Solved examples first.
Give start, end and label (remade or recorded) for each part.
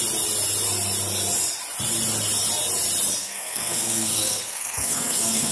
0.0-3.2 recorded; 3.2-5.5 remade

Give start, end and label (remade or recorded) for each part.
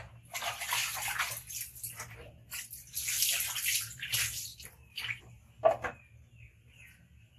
0.0-7.4 recorded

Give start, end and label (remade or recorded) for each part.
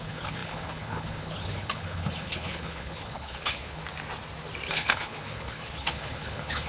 0.0-3.8 remade; 3.8-4.7 recorded; 4.7-6.7 remade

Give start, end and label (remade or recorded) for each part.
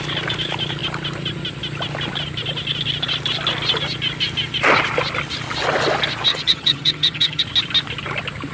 0.0-6.3 recorded; 6.3-7.4 remade; 7.4-8.5 recorded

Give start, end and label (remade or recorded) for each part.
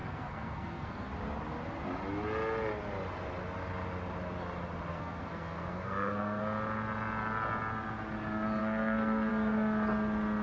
0.0-1.1 remade; 1.1-4.9 recorded; 4.9-6.4 remade; 6.4-8.6 recorded; 8.6-9.3 remade; 9.3-10.4 recorded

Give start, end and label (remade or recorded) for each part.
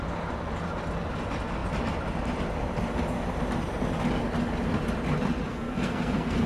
0.0-5.5 recorded; 5.5-6.5 remade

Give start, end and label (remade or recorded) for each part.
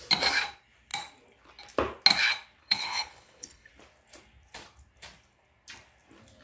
0.0-2.6 recorded; 2.6-3.7 remade; 3.7-6.4 recorded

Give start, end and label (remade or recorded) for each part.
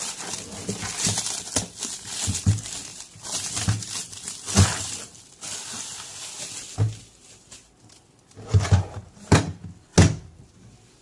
0.0-11.0 recorded